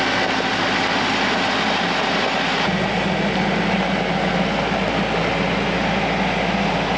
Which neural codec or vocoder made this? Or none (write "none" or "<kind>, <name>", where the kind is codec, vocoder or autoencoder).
none